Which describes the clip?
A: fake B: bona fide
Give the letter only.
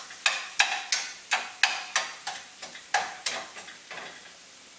B